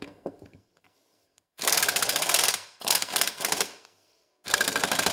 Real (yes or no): no